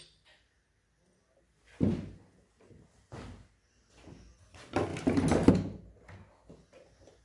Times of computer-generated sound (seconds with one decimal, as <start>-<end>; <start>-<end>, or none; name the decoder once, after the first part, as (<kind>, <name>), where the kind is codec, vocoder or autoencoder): none